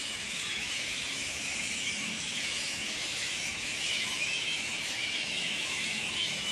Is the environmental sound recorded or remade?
remade